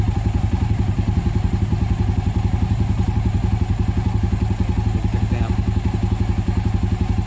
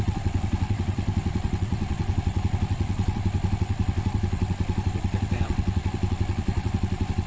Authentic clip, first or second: first